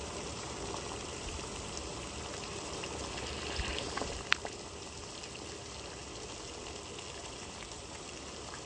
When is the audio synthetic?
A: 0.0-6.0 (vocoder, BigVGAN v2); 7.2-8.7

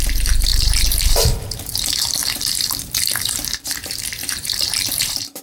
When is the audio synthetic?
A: 0.0-5.4 (vocoder, BigVGAN v2)

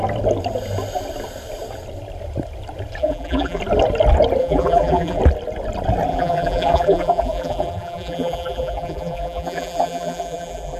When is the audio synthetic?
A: 3.0-3.6 (vocoder, BigVGAN v2); 4.4-5.2; 6.1-10.8

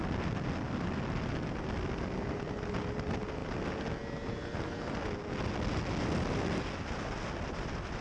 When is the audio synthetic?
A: none

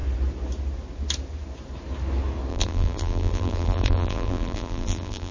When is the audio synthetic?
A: 2.5-5.3 (vocoder, BigVGAN v2)

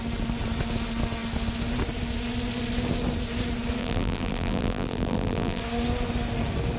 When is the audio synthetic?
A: 3.8-5.6 (vocoder, BigVGAN v2)

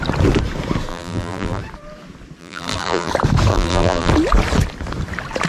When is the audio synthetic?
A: 0.9-1.6 (vocoder, BigVGAN v2); 2.4-3.1; 3.5-4.1